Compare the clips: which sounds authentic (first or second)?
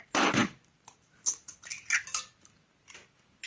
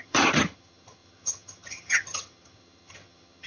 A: first